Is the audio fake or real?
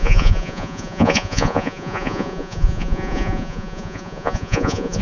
fake